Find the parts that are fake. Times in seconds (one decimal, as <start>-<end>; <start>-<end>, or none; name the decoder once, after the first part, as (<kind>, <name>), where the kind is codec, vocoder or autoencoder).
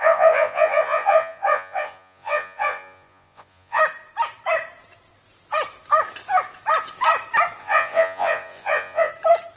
0.0-3.8 (vocoder, Vocos); 7.6-9.1